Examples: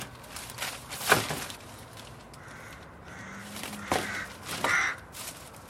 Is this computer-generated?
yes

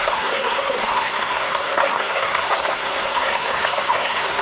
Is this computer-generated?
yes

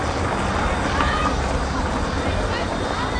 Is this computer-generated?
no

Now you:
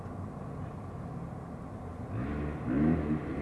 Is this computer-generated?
no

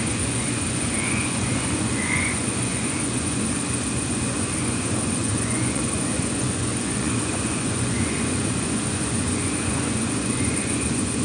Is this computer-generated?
yes